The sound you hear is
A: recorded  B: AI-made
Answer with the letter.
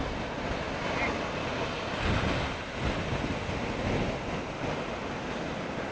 A